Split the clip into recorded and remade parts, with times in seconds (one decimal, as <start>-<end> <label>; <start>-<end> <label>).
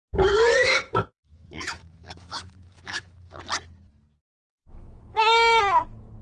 0.0-0.6 recorded; 0.6-3.4 remade; 3.4-4.6 recorded; 4.6-5.6 remade; 5.6-6.2 recorded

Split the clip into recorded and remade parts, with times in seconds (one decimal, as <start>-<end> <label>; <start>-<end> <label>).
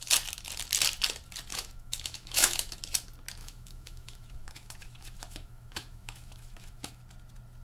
0.0-1.5 recorded; 1.5-2.8 remade; 2.8-3.4 recorded; 3.4-7.0 remade; 7.0-7.6 recorded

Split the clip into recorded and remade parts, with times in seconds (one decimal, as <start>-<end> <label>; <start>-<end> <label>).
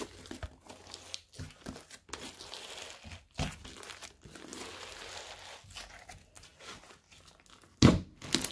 0.0-8.5 recorded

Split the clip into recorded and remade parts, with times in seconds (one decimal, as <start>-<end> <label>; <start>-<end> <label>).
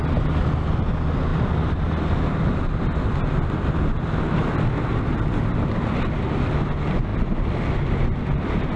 0.0-8.8 recorded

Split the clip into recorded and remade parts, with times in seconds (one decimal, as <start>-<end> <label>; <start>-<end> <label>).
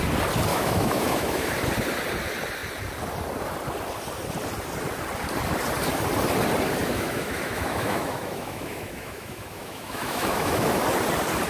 0.0-0.5 recorded; 0.5-1.5 remade; 1.5-6.8 recorded; 6.8-10.8 remade; 10.8-11.5 recorded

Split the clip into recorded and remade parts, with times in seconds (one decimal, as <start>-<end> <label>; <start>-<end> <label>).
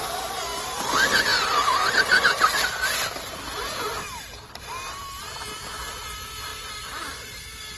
0.0-7.8 recorded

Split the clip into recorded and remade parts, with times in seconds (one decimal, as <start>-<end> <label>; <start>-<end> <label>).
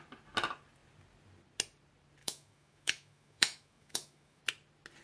0.0-2.2 recorded; 2.2-4.4 remade; 4.4-5.0 recorded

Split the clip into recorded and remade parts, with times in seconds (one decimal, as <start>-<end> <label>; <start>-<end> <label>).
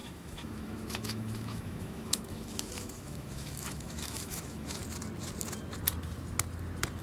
0.0-4.8 remade; 4.8-7.0 recorded